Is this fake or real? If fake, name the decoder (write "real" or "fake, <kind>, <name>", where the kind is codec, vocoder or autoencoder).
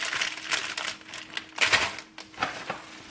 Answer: real